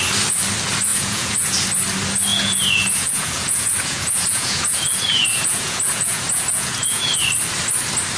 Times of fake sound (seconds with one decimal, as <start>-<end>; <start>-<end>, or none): 0.9-1.7; 2.3-7.2

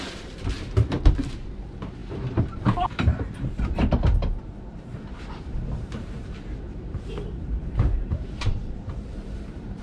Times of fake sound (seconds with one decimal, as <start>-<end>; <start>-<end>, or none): 0.0-9.8

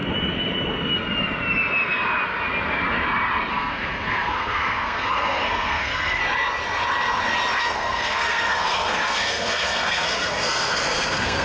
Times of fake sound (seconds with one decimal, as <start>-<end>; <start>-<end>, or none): 3.5-6.2; 7.6-11.4